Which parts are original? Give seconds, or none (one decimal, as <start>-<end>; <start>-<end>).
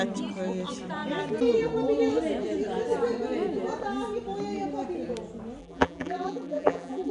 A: 0.0-5.6